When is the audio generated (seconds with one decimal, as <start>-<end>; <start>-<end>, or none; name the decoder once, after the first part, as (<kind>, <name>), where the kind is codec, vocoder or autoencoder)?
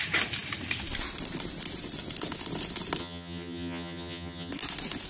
3.0-4.5 (vocoder, HiFi-GAN)